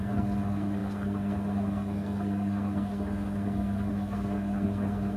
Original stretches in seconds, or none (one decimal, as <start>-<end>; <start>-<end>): none